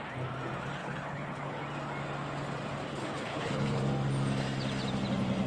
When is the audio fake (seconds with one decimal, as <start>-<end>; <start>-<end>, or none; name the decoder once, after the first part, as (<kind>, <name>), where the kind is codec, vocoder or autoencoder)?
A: 0.8-1.6 (codec, HILCodec); 2.9-3.8